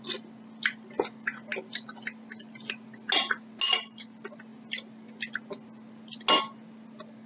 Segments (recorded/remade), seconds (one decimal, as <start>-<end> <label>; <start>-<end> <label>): 0.0-7.3 recorded

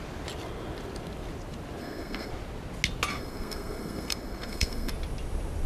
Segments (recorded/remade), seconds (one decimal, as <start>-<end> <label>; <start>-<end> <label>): 0.0-1.8 recorded; 1.8-2.3 remade; 2.3-3.1 recorded; 3.1-4.9 remade; 4.9-5.7 recorded

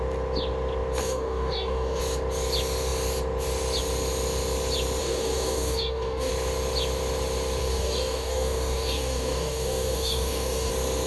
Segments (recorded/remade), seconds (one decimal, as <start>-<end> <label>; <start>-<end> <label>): 0.0-1.0 recorded; 1.0-2.0 remade; 2.0-5.0 recorded; 5.0-6.3 remade; 6.3-7.6 recorded; 7.6-10.7 remade; 10.7-11.1 recorded